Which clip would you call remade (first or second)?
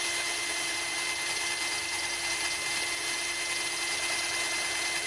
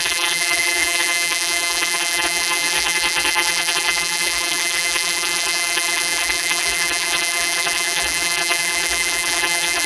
second